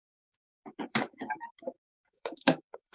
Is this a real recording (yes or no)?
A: no